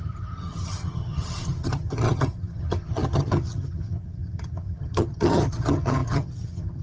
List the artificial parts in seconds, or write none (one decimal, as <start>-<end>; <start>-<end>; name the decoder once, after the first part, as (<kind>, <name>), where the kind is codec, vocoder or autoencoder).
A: 0.0-6.8 (vocoder, HiFi-GAN)